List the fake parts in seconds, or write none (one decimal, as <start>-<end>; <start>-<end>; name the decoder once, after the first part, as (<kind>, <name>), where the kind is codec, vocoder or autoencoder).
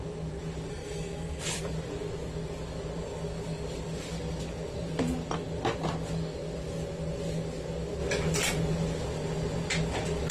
0.7-1.4 (codec, SNAC)